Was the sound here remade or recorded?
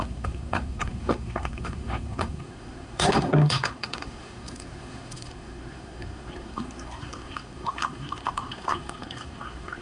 remade